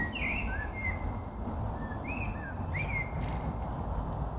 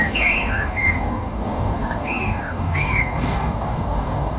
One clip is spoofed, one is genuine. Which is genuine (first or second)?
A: first